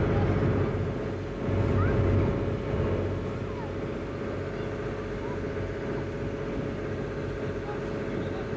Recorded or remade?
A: recorded